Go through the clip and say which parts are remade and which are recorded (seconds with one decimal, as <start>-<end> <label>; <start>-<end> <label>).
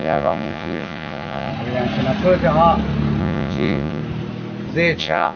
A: 0.0-1.5 remade; 1.5-3.2 recorded; 3.2-4.0 remade; 4.0-5.0 recorded; 5.0-5.4 remade